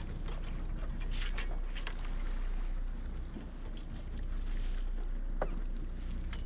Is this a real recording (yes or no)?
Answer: yes